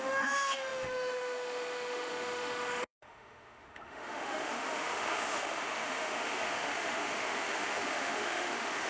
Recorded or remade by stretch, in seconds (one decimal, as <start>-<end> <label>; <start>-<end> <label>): 0.0-8.9 remade